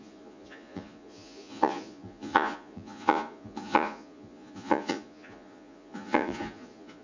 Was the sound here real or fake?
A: fake